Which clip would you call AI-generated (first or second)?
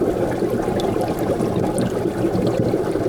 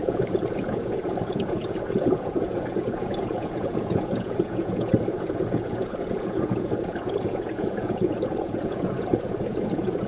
second